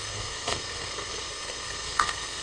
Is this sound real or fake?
fake